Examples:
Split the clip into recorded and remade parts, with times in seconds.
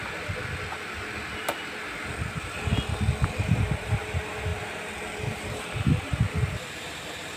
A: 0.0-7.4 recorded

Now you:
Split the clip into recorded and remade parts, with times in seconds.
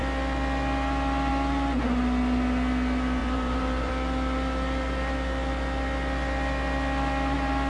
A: 0.0-3.2 recorded; 3.2-3.9 remade; 3.9-7.7 recorded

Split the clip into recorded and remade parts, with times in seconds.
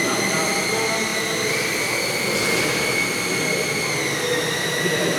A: 0.0-5.2 recorded